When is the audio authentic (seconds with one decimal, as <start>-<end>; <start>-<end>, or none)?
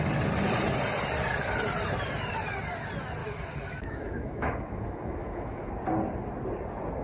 0.0-3.2; 5.7-7.0